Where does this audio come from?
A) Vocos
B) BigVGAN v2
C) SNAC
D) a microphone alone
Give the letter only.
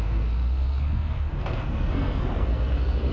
C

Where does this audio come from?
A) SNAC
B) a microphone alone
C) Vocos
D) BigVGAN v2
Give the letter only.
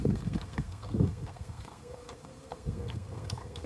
A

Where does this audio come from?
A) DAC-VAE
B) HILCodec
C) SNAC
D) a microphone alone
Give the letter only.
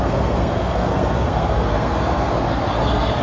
C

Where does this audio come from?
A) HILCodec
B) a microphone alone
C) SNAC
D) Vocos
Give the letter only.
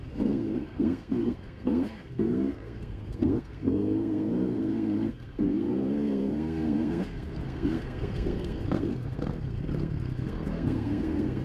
C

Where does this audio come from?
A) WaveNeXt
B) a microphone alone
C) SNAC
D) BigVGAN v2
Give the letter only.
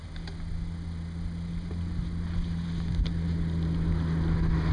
B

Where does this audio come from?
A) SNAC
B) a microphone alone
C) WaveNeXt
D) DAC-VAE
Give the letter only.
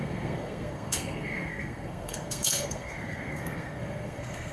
A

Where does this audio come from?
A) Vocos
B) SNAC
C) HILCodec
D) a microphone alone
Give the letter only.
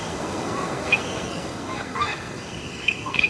B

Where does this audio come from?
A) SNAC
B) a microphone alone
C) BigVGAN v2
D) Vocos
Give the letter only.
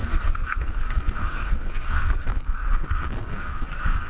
A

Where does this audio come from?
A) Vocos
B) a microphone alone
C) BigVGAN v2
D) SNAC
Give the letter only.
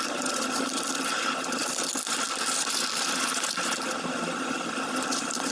B